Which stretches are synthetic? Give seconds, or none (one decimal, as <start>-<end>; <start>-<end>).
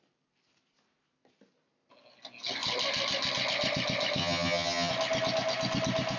4.2-4.9